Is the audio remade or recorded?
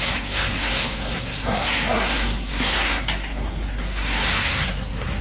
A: remade